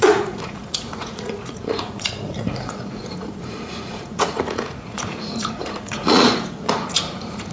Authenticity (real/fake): fake